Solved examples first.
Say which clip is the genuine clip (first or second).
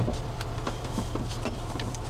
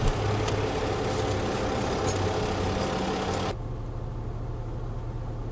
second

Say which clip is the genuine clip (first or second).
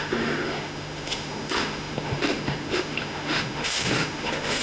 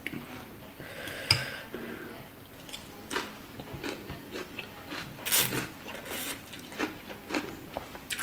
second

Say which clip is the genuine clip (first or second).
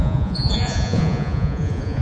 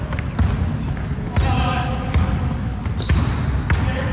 second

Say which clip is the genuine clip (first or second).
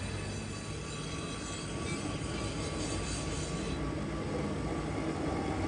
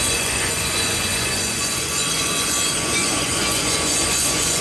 first